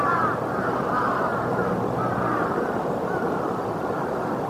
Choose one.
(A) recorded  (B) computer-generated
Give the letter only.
B